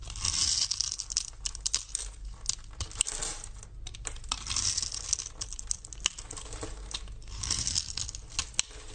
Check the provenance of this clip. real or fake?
real